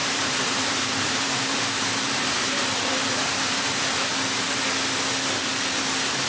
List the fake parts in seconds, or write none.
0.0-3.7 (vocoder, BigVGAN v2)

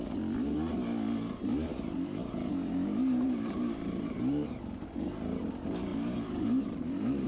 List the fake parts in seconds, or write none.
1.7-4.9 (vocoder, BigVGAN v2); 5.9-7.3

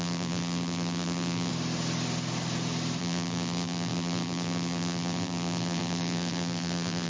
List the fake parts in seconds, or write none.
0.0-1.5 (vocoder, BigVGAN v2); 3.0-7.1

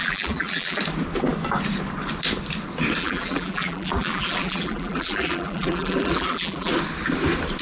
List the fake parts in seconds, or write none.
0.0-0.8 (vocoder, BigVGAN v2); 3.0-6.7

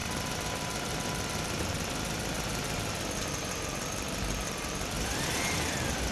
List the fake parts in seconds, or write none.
0.0-6.1 (vocoder, BigVGAN v2)

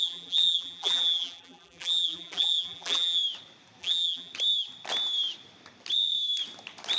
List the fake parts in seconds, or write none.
0.0-3.2 (vocoder, BigVGAN v2); 3.8-4.3

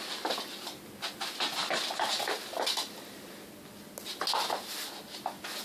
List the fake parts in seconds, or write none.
none

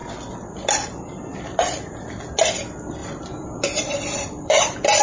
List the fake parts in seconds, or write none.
3.0-5.0 (vocoder, BigVGAN v2)